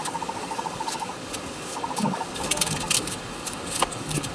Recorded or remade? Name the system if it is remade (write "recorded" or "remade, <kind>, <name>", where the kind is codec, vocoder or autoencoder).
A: remade, codec, DAC